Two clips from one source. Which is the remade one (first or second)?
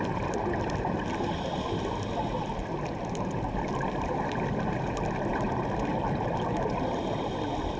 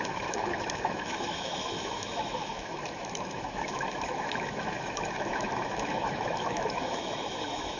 second